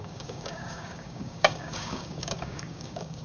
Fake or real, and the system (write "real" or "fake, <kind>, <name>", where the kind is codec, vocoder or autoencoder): fake, codec, DAC